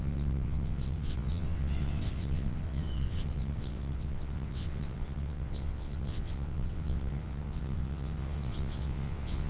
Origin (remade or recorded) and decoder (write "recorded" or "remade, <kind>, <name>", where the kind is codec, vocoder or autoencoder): remade, vocoder, WaveNeXt